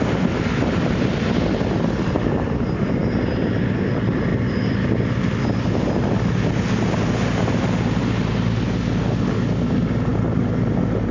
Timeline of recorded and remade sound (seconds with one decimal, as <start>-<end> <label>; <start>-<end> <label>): 0.0-4.3 recorded; 4.3-5.1 remade; 5.1-11.1 recorded